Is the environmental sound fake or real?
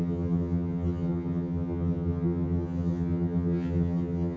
fake